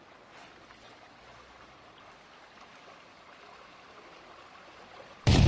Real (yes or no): no